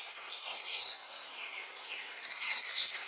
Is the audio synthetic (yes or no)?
yes